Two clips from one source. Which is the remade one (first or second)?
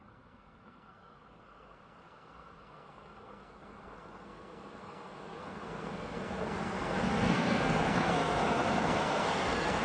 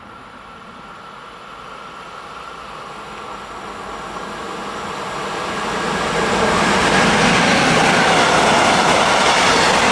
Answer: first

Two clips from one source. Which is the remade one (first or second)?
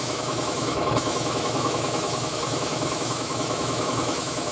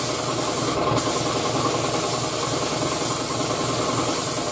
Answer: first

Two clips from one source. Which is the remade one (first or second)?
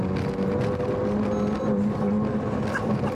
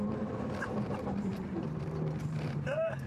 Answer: second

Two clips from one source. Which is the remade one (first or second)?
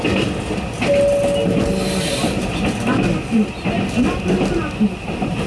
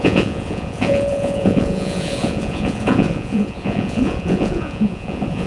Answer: second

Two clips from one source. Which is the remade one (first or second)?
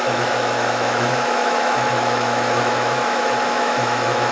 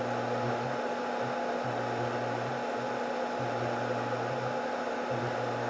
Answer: first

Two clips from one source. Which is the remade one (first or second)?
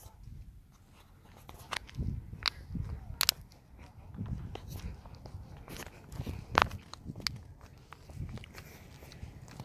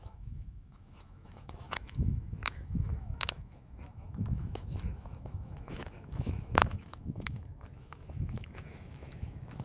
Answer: second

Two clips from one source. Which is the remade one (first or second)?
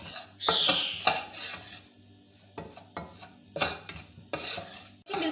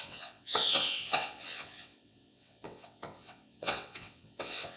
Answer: second